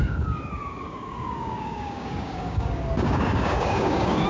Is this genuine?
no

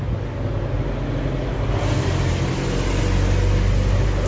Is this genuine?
yes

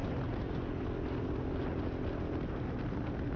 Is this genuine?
yes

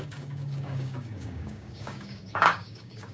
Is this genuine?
no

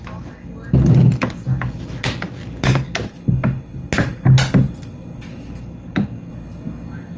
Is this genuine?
yes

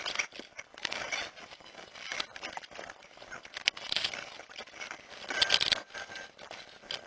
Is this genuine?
yes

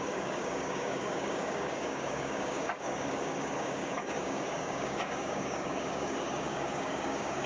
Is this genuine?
no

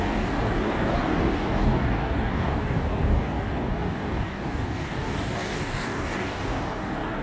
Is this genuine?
no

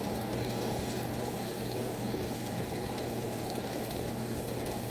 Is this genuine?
no